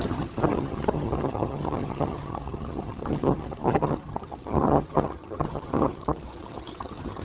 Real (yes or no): no